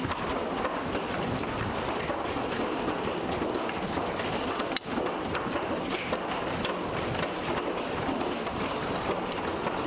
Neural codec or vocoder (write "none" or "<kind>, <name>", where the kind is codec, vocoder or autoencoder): none